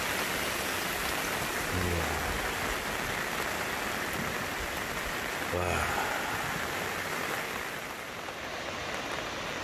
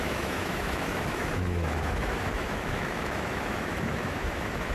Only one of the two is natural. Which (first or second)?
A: first